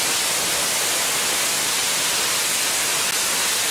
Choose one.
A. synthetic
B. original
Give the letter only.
B